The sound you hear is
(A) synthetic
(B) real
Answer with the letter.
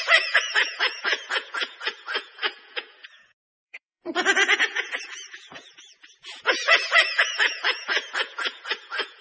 A